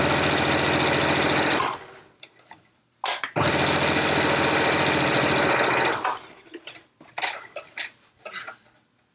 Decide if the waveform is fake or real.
real